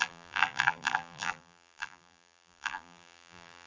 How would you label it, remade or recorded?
remade